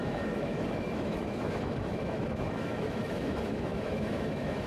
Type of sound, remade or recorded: remade